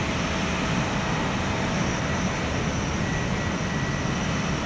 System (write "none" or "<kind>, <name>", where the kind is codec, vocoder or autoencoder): none